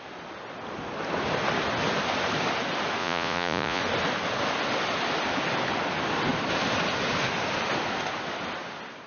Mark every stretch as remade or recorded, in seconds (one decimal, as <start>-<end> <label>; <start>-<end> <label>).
0.0-3.0 recorded; 3.0-3.8 remade; 3.8-9.1 recorded